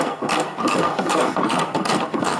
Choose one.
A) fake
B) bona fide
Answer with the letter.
A